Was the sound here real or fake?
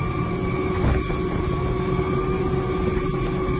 real